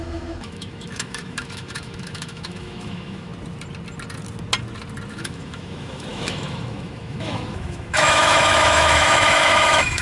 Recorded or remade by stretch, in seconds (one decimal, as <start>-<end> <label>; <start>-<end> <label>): 0.0-3.3 remade; 3.3-5.1 recorded; 5.1-10.0 remade